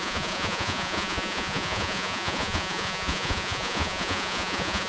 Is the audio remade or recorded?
remade